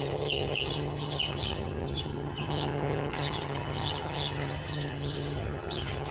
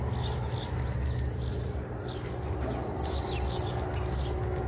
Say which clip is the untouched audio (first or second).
second